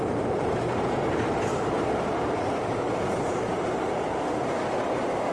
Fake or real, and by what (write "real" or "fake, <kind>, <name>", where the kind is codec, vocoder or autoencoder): fake, vocoder, BigVGAN v2